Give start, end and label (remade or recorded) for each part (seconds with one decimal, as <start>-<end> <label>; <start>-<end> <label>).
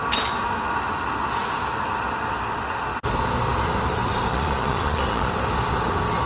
0.0-4.3 recorded; 4.3-5.3 remade; 5.3-6.3 recorded